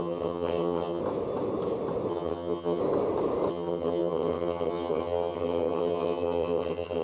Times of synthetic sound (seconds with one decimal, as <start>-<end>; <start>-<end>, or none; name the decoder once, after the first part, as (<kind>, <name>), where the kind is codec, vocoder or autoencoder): 0.0-1.0 (vocoder, HiFi-GAN); 2.1-2.8; 3.5-7.0

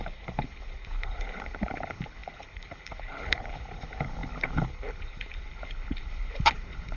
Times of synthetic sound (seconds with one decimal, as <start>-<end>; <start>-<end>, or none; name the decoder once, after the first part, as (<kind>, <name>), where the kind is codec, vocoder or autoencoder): 0.0-7.0 (codec, HILCodec)